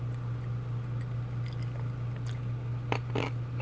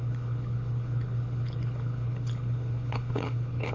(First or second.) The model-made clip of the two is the second